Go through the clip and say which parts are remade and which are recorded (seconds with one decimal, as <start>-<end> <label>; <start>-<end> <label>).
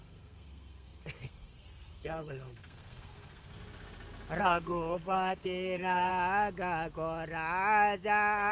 0.0-3.5 remade; 3.5-4.4 recorded; 4.4-6.1 remade; 6.1-8.5 recorded